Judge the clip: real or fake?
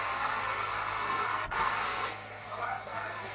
fake